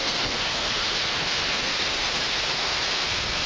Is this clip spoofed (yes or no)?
yes